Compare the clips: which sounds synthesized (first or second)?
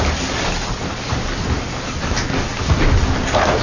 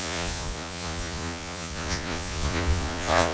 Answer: second